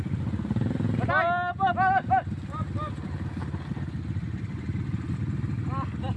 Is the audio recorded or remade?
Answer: recorded